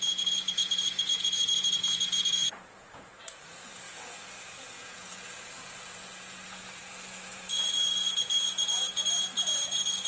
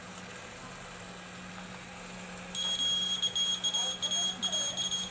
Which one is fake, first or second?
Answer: first